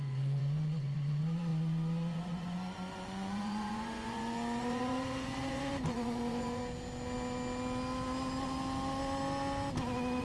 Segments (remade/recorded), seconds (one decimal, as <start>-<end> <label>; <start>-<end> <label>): 0.0-6.6 remade; 6.6-10.2 recorded